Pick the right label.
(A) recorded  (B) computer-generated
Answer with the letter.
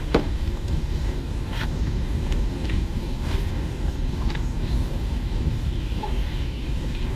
B